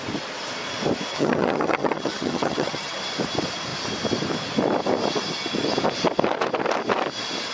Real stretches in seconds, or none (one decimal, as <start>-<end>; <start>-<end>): 0.0-1.1; 3.0-7.5